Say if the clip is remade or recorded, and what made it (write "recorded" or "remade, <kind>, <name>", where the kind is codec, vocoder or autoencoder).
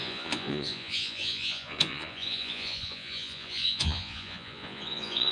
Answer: remade, vocoder, Vocos